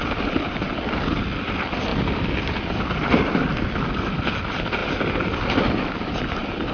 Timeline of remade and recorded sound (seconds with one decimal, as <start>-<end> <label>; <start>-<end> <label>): 0.0-6.7 recorded